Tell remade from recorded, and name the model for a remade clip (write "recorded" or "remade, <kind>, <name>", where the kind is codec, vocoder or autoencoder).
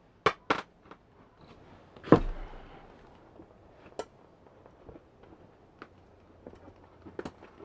recorded